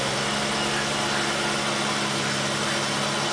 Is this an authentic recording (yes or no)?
yes